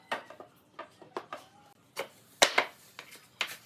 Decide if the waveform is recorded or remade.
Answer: recorded